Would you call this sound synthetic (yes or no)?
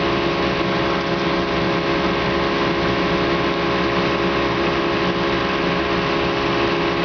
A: no